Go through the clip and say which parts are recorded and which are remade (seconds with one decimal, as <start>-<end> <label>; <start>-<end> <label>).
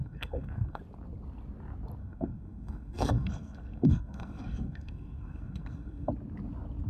0.0-0.8 remade; 0.8-2.0 recorded; 2.0-6.1 remade; 6.1-6.9 recorded